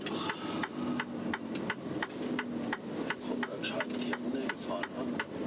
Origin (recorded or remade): recorded